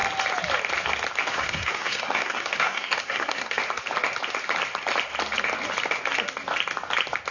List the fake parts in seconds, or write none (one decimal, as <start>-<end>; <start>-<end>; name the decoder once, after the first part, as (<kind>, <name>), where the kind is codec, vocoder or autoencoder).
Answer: 1.3-3.6 (codec, SNAC)